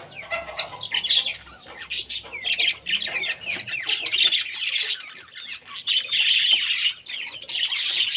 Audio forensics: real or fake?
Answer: real